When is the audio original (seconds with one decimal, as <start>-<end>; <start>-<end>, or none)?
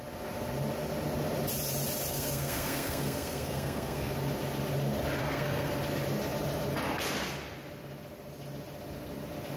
0.0-2.1; 4.1-5.2; 5.7-9.6